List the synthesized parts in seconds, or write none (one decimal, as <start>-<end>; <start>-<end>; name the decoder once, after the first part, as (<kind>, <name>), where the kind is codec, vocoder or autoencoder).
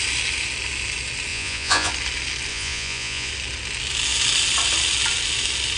1.3-1.9 (vocoder, Vocos); 2.5-3.3